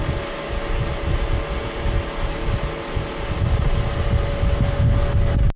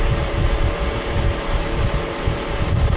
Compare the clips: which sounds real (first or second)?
first